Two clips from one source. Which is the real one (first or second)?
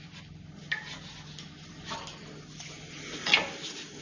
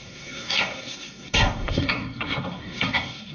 first